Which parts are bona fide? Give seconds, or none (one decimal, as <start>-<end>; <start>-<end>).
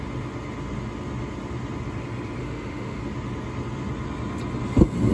0.0-2.4; 3.0-5.1